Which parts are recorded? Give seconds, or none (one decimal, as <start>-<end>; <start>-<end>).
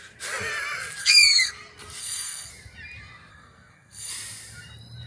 0.0-1.0; 1.5-2.0; 2.5-3.3; 4.1-5.1